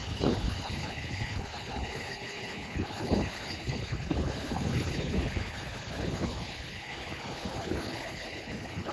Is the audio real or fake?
fake